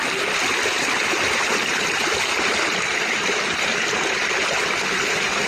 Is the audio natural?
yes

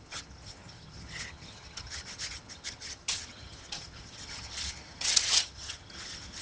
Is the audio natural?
no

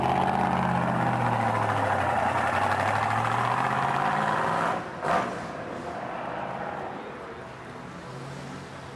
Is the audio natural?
yes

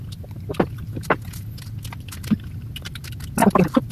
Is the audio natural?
yes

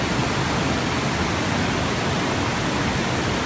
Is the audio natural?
yes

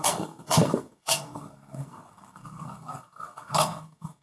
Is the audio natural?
no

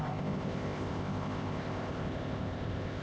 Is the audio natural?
no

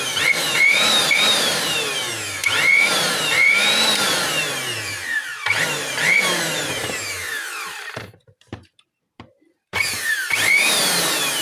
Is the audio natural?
no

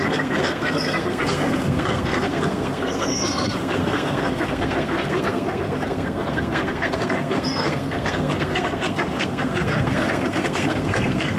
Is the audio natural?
no